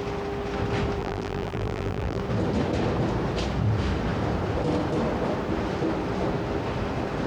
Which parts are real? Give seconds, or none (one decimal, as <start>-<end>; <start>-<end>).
0.0-1.0; 2.2-7.3